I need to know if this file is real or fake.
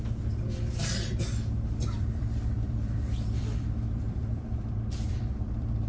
fake